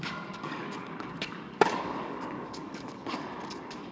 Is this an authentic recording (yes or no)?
no